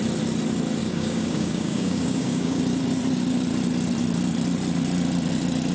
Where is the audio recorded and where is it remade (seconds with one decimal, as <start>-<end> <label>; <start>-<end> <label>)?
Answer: 0.0-0.8 recorded; 0.8-2.6 remade; 2.6-5.7 recorded